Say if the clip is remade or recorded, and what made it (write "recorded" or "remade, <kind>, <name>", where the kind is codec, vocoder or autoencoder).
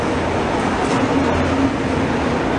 recorded